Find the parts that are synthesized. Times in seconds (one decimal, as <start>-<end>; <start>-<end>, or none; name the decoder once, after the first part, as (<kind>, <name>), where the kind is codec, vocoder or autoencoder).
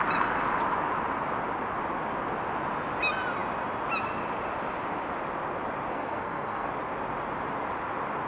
5.9-6.7 (codec, SNAC)